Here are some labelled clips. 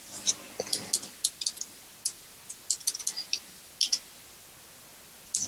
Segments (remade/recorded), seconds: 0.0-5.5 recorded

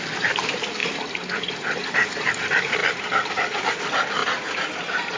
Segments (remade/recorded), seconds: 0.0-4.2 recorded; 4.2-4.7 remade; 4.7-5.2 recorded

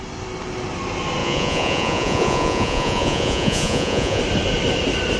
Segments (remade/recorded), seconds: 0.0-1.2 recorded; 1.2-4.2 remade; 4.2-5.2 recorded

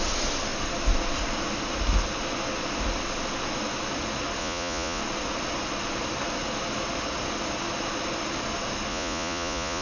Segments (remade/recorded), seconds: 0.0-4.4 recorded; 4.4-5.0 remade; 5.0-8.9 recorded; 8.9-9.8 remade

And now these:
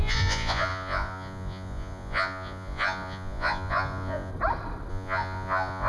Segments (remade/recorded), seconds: 0.0-4.3 remade; 4.3-4.9 recorded; 4.9-5.9 remade